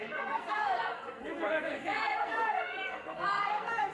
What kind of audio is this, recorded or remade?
remade